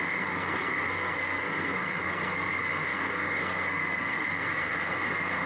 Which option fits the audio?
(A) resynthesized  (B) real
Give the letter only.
A